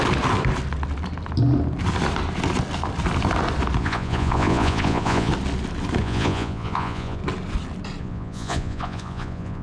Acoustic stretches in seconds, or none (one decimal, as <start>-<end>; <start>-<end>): 0.0-3.8; 5.3-6.0; 7.2-8.0